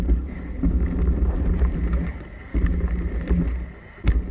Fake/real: real